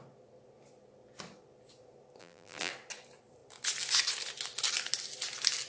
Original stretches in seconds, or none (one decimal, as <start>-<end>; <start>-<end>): 0.0-2.2; 2.7-5.7